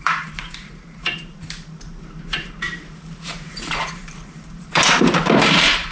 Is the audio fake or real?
fake